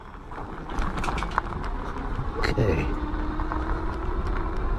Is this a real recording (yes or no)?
yes